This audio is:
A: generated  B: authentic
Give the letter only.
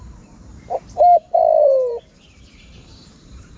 A